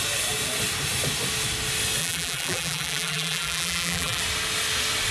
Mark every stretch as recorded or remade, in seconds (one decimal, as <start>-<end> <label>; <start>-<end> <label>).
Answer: 0.0-2.0 recorded; 2.0-4.2 remade; 4.2-5.1 recorded